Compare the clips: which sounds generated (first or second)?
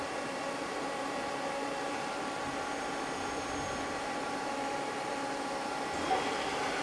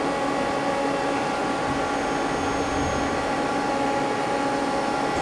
first